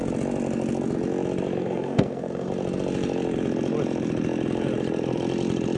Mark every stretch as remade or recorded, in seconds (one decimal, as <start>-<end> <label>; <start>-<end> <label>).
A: 0.0-1.6 recorded; 1.6-2.5 remade; 2.5-5.8 recorded